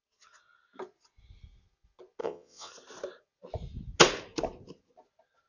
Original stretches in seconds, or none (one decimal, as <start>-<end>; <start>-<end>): 0.0-2.2; 2.7-5.5